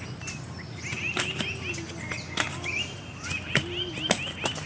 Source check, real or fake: real